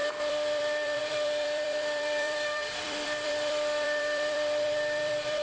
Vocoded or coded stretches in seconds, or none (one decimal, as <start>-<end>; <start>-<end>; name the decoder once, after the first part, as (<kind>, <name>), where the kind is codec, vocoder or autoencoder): 0.0-5.4 (vocoder, BigVGAN v2)

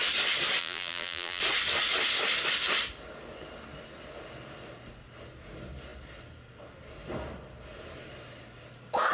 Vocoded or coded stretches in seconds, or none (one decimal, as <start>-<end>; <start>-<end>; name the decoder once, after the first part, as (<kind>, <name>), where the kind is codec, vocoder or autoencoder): 0.6-1.4 (vocoder, BigVGAN v2)

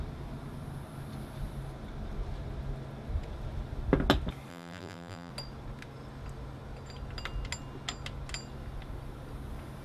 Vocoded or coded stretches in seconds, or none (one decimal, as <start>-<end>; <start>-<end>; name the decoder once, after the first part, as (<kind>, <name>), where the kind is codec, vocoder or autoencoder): 4.5-5.3 (vocoder, BigVGAN v2)

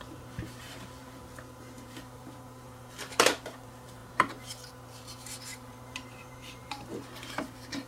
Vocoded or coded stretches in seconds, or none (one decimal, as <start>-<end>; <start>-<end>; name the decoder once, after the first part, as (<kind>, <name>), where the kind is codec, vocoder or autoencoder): 0.0-7.9 (vocoder, BigVGAN v2)

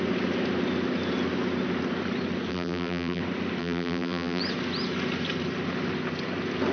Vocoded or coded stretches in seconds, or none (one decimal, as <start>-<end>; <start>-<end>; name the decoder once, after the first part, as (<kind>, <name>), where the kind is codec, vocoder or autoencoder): 2.5-3.2 (vocoder, BigVGAN v2); 3.6-4.4

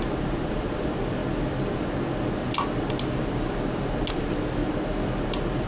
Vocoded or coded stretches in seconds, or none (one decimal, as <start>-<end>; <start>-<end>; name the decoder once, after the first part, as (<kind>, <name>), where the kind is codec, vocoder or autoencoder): 0.0-1.2 (vocoder, BigVGAN v2); 4.1-4.6